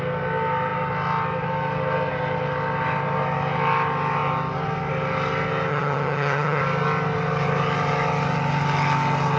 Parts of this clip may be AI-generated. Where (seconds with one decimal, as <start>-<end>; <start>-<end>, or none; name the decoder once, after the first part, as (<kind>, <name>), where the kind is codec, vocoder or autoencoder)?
5.7-6.6 (vocoder, HiFi-GAN)